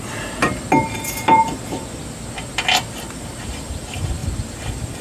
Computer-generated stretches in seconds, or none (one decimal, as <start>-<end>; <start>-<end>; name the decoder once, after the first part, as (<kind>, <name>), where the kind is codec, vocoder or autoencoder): 0.0-0.4 (vocoder, BigVGAN v2); 3.4-5.0